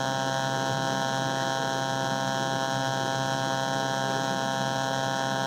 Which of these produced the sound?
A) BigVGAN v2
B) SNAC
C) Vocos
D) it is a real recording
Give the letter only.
D